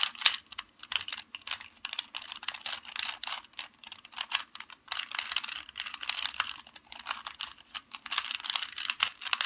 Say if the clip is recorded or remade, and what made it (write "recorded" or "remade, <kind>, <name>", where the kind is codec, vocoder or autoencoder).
recorded